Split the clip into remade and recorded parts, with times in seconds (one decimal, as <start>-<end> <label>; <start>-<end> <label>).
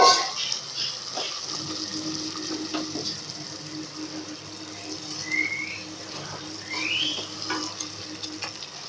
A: 0.0-1.9 recorded; 1.9-7.2 remade; 7.2-8.9 recorded